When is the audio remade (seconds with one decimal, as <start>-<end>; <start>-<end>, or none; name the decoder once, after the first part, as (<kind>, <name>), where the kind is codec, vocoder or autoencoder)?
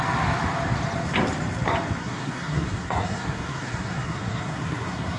2.0-5.2 (codec, SNAC)